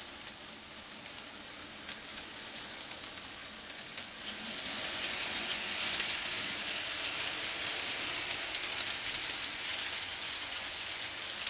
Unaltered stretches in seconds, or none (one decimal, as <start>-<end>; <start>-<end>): 0.0-2.1; 2.8-3.4; 6.4-9.5; 11.1-11.5